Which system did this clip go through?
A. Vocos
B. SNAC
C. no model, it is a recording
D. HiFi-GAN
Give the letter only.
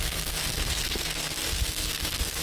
B